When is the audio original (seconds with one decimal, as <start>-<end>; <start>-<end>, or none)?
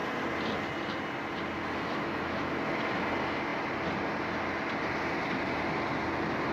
0.0-1.6; 2.6-6.5